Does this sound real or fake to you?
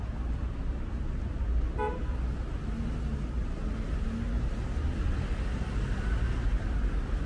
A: real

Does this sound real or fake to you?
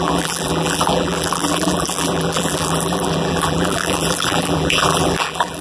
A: fake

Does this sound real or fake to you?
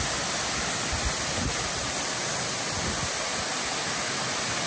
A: real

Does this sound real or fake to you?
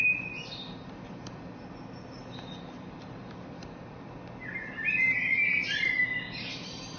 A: fake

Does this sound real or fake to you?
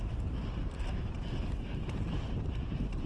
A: fake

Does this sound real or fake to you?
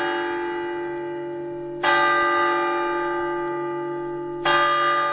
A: real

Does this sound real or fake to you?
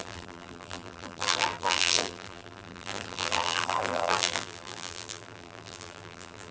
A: fake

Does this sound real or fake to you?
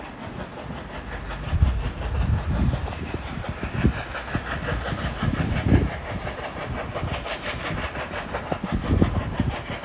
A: real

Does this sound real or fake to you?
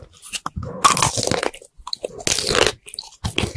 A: real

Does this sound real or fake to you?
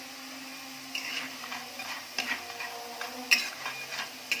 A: real